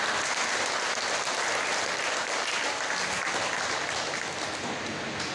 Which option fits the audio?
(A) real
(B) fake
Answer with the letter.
A